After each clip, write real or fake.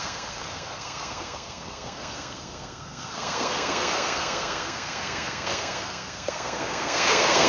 fake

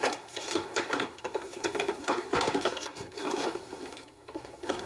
fake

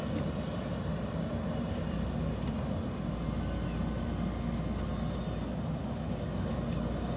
real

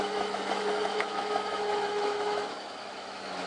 fake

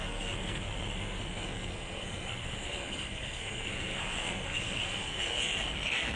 fake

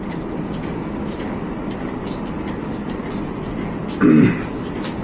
real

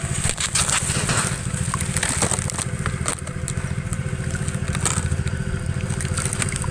real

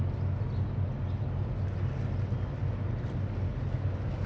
real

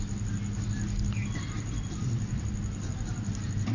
real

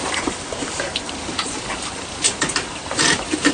fake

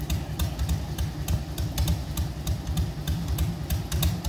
real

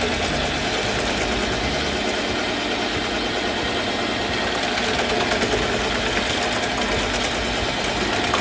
real